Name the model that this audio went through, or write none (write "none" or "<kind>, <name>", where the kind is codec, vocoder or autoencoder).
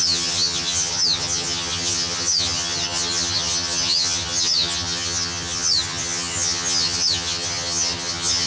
vocoder, HiFi-GAN